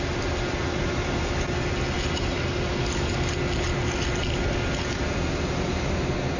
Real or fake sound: real